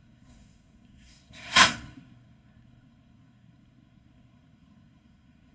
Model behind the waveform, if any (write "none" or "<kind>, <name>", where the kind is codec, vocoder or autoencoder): codec, SNAC